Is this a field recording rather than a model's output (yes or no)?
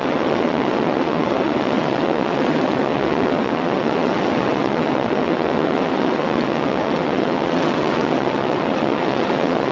no